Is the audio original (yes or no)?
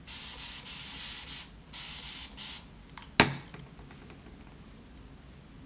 yes